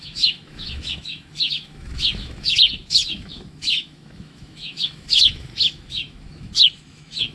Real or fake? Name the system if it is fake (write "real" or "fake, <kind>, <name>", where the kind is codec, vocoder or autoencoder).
fake, autoencoder, DAC-VAE